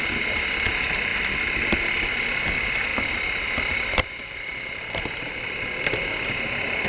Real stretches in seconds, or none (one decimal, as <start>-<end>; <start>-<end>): 0.0-2.9; 5.8-6.9